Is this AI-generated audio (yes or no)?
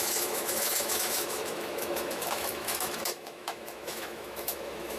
yes